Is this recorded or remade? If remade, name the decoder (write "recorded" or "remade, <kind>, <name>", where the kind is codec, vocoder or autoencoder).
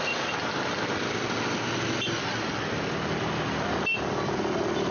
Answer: recorded